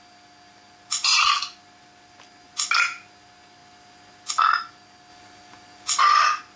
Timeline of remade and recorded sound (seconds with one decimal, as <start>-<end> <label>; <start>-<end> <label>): 0.0-6.6 recorded